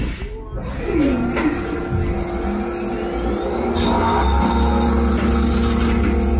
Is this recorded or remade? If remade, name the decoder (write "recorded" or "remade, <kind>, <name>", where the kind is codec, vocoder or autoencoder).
recorded